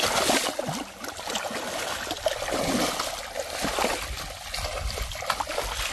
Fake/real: real